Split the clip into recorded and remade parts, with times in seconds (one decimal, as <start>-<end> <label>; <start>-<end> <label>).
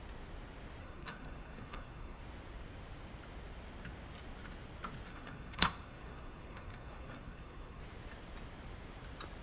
0.0-0.8 recorded; 0.8-2.2 remade; 2.2-5.1 recorded; 5.1-7.8 remade; 7.8-9.4 recorded